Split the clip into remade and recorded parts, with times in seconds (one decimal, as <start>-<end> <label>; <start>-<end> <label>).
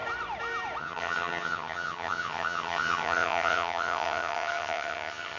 0.0-0.8 recorded; 0.8-5.4 remade